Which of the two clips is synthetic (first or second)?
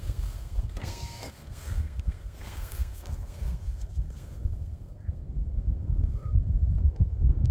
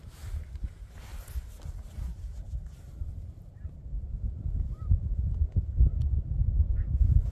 first